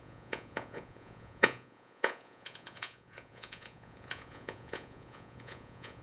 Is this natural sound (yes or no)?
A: no